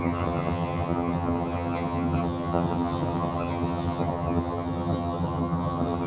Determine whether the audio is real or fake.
fake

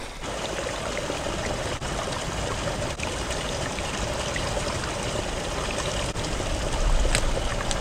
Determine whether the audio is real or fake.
real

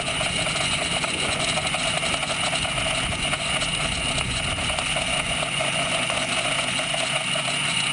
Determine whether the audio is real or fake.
fake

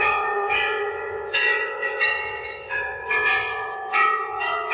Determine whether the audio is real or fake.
fake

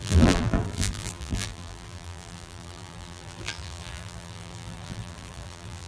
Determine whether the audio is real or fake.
fake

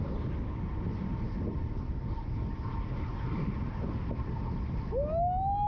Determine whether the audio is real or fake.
real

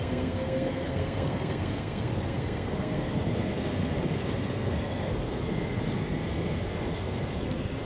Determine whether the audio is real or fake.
fake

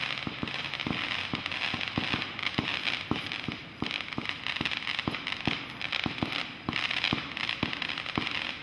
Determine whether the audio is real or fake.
real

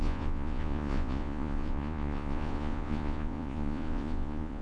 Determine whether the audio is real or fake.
fake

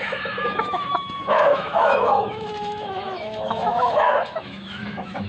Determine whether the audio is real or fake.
fake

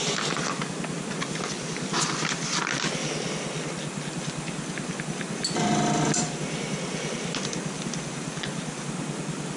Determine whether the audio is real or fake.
real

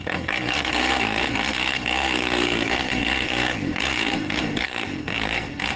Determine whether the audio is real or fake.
fake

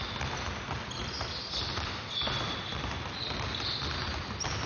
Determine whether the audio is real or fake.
real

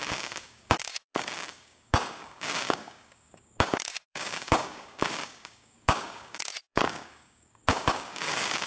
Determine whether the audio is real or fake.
fake